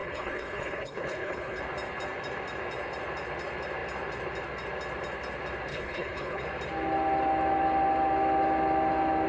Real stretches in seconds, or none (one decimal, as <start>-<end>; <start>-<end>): 1.6-5.7; 6.4-9.3